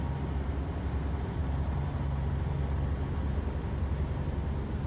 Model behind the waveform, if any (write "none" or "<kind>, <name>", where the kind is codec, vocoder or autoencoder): none